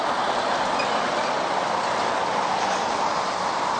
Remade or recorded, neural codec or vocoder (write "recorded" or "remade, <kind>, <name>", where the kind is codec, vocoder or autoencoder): recorded